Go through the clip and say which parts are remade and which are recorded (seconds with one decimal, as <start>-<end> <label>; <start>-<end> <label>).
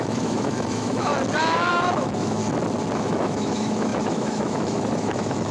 0.0-1.1 remade; 1.1-1.7 recorded; 1.7-2.4 remade; 2.4-2.9 recorded; 2.9-5.5 remade